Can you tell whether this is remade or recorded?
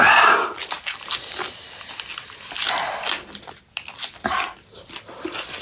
recorded